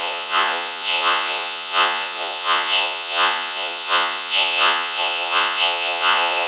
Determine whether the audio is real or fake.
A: fake